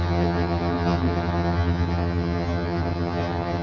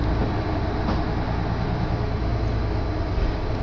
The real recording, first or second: second